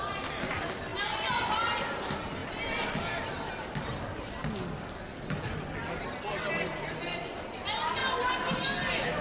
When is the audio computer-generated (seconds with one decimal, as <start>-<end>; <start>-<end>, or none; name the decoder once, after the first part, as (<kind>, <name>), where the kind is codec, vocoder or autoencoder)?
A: none